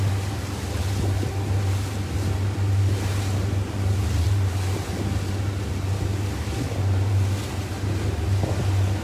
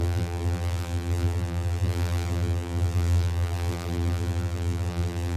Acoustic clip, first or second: first